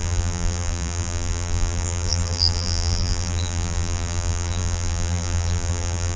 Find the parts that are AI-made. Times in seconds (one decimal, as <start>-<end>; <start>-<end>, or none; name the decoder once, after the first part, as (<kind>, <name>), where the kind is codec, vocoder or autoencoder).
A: 0.0-6.2 (vocoder, BigVGAN v2)